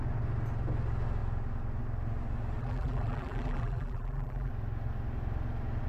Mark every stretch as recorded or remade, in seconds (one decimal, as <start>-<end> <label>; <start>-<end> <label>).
0.0-2.6 recorded; 2.6-4.5 remade; 4.5-5.9 recorded